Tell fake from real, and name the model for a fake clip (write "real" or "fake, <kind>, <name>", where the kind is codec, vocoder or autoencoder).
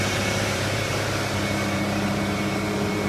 fake, vocoder, BigVGAN v2